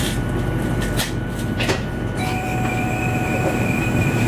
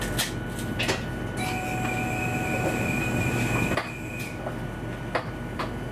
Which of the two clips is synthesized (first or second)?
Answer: first